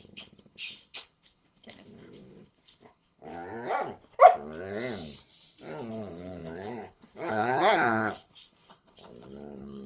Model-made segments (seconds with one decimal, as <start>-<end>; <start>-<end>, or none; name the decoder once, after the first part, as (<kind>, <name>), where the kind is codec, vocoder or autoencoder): 0.0-3.3 (codec, HILCodec); 5.9-9.9